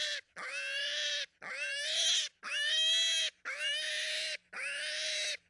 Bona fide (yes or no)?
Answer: yes